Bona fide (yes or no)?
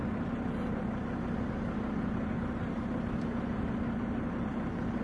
yes